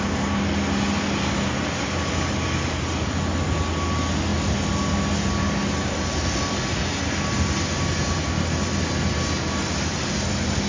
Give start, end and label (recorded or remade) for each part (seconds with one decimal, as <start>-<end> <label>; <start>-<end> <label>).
0.0-10.7 recorded